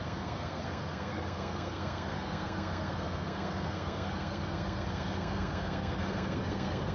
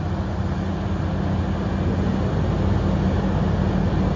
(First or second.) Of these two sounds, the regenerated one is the first